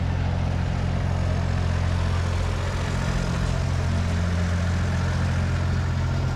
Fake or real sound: real